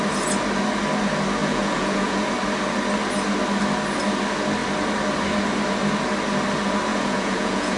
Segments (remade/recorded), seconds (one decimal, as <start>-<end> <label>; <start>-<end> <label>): 0.0-1.4 recorded; 1.4-2.2 remade; 2.2-6.9 recorded; 6.9-7.8 remade